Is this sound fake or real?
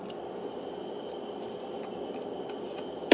real